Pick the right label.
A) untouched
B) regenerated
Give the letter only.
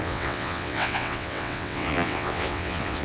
B